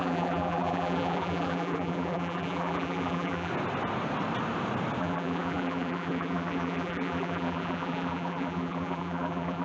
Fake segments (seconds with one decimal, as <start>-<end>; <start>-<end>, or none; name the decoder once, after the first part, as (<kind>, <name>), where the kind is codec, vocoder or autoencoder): 0.0-3.5 (vocoder, BigVGAN v2); 5.0-9.6